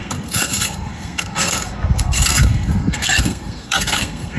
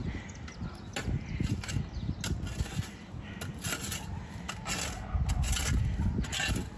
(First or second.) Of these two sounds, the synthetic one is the first